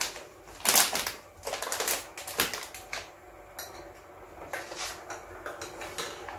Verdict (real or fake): real